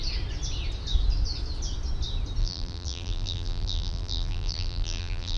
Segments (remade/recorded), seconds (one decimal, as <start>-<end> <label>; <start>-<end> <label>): 0.0-2.4 recorded; 2.4-5.4 remade